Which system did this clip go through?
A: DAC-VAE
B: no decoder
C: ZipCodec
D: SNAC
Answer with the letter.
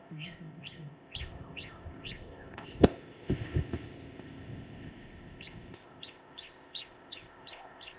C